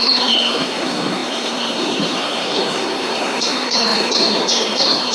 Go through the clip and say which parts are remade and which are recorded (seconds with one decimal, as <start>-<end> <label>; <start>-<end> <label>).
0.0-5.1 remade